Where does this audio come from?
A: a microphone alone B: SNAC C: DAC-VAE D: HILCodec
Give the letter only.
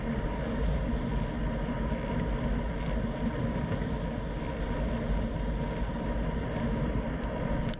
A